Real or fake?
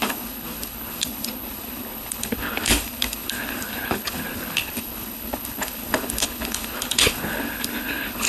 fake